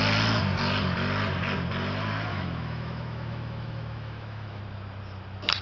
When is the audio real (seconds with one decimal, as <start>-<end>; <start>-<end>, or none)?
0.0-2.3; 4.6-5.6